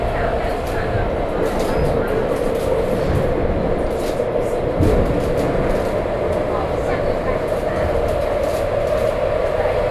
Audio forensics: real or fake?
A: real